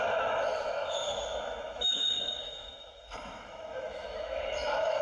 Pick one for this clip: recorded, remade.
remade